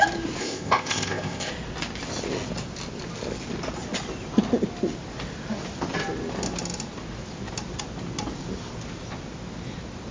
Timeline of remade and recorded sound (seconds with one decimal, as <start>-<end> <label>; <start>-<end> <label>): 0.0-0.4 recorded; 0.4-1.5 remade; 1.5-10.1 recorded

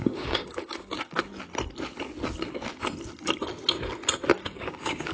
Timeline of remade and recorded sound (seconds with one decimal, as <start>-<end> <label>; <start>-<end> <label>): 0.0-1.3 remade; 1.3-4.4 recorded; 4.4-5.1 remade

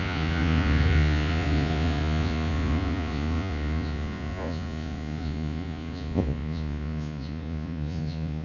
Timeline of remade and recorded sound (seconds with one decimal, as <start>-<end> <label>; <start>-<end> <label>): 0.0-8.4 remade

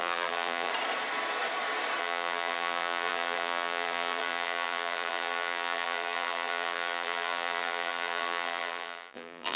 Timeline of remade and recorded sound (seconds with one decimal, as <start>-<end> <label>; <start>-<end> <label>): 0.0-0.7 remade; 0.7-2.0 recorded; 2.0-9.6 remade

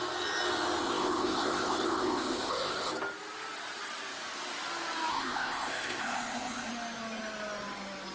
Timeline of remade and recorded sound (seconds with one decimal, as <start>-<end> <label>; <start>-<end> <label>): 0.0-0.8 recorded; 0.8-2.9 remade; 2.9-5.1 recorded; 5.1-6.7 remade; 6.7-8.1 recorded

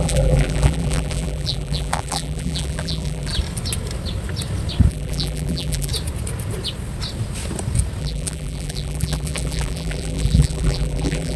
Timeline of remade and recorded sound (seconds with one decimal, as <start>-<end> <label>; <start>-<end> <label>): 0.0-3.3 remade; 3.3-4.9 recorded; 4.9-5.9 remade; 5.9-8.0 recorded; 8.0-11.4 remade

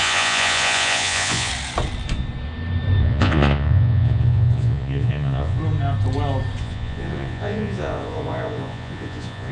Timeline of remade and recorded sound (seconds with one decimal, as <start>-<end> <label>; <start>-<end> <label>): 0.0-1.5 remade; 1.5-3.0 recorded; 3.0-5.6 remade; 5.6-6.6 recorded; 6.6-9.5 remade